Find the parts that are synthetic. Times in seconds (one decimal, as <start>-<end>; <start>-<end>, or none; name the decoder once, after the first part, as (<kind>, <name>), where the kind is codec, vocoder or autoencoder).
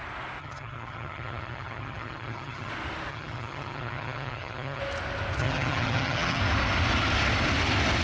0.4-2.7 (vocoder, HiFi-GAN); 3.1-4.8; 5.4-6.4